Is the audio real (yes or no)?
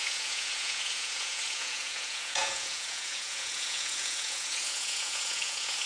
no